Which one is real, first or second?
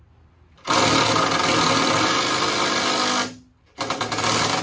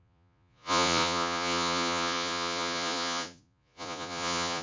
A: first